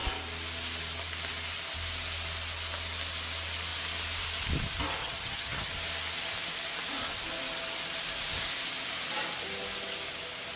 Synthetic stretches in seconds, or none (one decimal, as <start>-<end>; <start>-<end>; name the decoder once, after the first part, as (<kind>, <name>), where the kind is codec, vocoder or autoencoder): 5.0-5.7 (vocoder, HiFi-GAN)